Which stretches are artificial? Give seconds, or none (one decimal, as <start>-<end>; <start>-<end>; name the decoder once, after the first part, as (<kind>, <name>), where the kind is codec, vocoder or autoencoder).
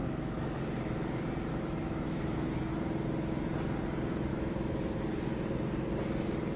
0.0-0.6 (autoencoder, DAC-VAE); 1.5-2.7; 4.3-4.8